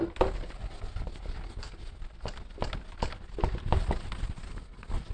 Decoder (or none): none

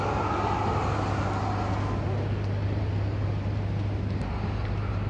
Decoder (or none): none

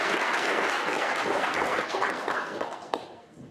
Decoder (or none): codec, SNAC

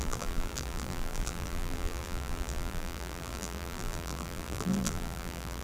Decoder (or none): vocoder, BigVGAN v2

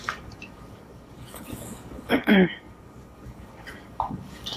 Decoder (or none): codec, DAC